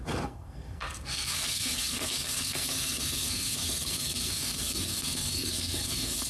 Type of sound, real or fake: fake